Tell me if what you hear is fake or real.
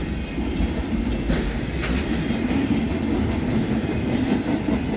real